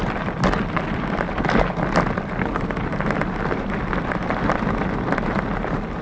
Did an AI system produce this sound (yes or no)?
no